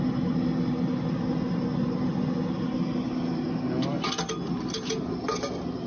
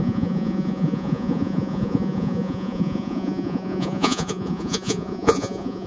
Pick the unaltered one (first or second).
first